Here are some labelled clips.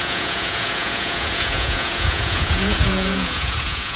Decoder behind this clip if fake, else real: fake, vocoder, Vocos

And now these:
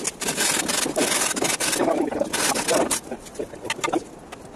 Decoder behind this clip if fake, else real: real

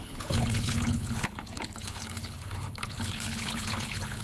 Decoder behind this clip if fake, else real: fake, codec, HILCodec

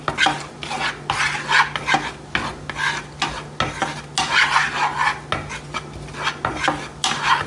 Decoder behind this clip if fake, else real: real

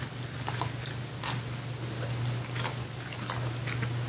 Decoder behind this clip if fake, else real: real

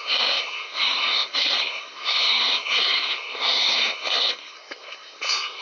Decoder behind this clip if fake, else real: fake, codec, SNAC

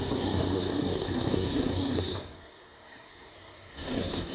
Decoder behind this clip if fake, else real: fake, codec, SNAC